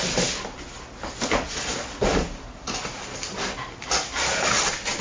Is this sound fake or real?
real